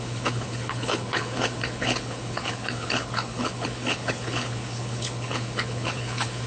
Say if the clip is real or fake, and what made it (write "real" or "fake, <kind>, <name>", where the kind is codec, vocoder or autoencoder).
fake, codec, HILCodec